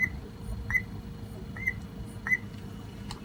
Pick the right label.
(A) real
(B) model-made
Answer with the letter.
A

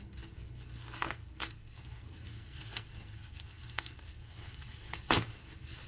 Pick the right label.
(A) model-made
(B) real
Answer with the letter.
A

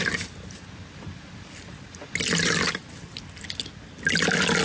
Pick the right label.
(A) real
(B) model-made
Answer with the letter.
A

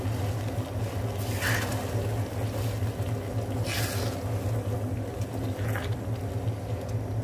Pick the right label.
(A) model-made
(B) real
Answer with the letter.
B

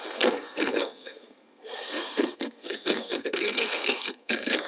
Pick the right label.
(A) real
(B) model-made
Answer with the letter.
B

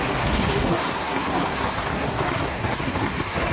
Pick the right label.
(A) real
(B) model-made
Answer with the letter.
B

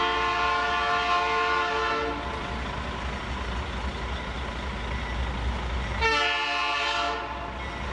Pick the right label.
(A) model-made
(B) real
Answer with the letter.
B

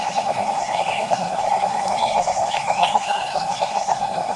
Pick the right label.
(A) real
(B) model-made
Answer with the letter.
B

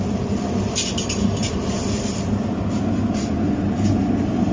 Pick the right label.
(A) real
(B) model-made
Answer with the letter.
A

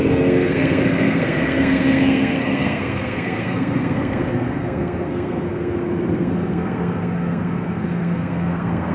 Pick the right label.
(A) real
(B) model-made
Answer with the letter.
B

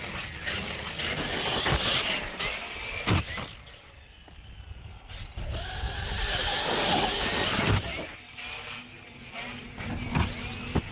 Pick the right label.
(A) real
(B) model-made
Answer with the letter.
A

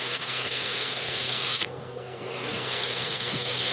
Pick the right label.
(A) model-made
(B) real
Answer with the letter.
A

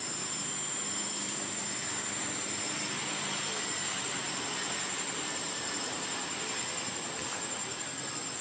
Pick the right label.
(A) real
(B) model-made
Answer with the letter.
A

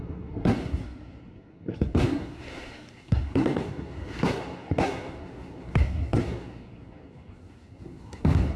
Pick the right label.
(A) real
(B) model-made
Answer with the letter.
B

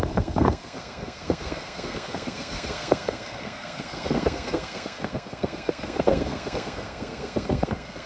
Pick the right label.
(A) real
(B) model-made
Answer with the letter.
B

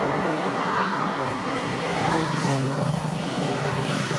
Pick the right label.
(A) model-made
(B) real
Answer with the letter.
A